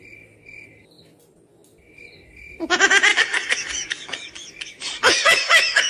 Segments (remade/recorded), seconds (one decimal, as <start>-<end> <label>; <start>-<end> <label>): 0.0-3.1 recorded; 3.1-5.9 remade